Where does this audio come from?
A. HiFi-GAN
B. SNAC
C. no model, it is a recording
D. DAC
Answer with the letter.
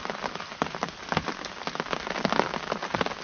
C